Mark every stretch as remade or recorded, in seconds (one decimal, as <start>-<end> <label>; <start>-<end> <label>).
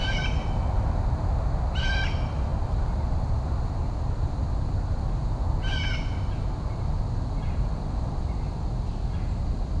0.0-9.8 recorded